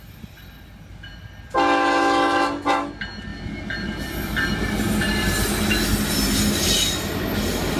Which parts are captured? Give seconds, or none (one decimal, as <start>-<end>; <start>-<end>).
0.0-3.3; 4.5-7.8